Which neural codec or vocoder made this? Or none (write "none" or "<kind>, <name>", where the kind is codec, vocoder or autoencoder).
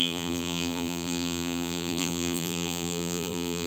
vocoder, BigVGAN v2